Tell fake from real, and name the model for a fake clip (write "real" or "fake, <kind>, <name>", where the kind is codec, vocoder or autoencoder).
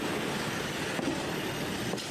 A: real